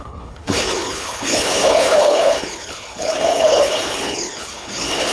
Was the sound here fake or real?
fake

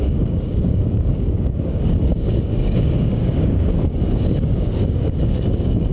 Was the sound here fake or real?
fake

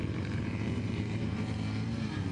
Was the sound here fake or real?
fake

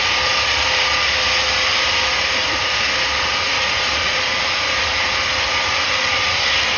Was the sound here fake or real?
real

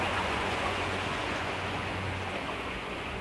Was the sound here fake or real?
fake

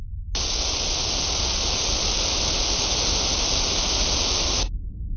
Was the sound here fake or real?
real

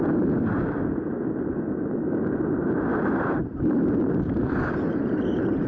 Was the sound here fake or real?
real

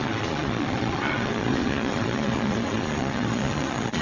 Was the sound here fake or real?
fake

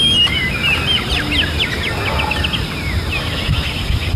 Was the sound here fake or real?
real